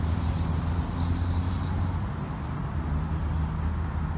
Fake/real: real